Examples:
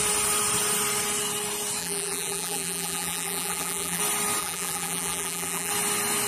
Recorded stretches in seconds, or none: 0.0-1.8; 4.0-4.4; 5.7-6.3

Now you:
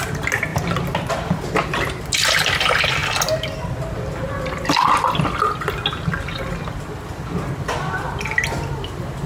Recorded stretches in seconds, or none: 0.0-9.3

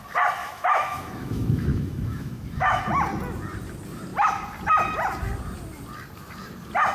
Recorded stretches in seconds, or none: 0.0-0.4; 2.8-6.9

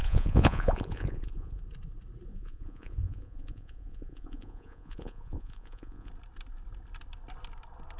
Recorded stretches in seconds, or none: 1.6-2.3; 6.1-8.0

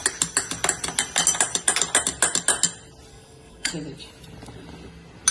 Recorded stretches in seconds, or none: 0.0-3.1; 3.7-5.3